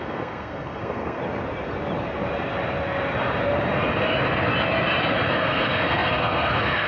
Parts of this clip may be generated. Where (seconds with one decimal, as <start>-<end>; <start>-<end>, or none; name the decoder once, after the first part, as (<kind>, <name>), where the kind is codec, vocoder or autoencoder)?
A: 0.0-1.2 (codec, SNAC); 5.3-6.9